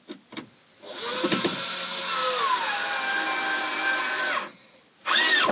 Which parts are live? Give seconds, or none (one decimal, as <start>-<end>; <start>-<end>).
0.0-5.5